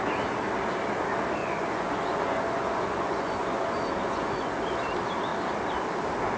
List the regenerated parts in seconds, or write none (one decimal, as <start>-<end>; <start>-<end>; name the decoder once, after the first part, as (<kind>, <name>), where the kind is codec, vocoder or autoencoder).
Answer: 1.4-4.5 (vocoder, Vocos)